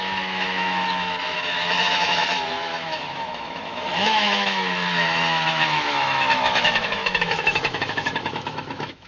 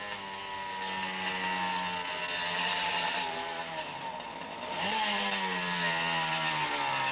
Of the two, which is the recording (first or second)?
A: second